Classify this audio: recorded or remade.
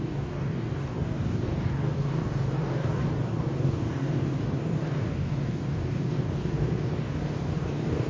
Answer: remade